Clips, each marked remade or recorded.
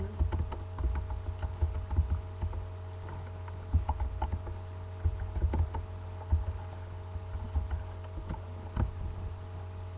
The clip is recorded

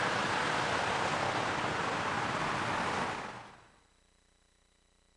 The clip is recorded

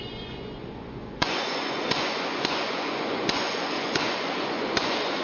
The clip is remade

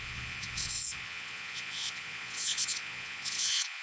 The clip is remade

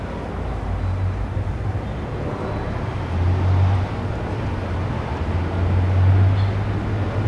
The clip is recorded